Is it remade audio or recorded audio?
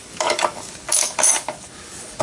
remade